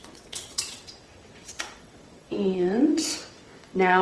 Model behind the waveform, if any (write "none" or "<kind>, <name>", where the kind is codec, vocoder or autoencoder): vocoder, WaveNeXt